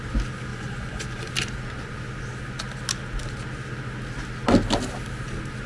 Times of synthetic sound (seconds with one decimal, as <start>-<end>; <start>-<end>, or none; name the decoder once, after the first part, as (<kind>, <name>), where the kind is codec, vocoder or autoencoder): 0.5-1.3 (vocoder, Vocos)